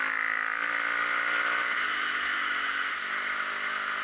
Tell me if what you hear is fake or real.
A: real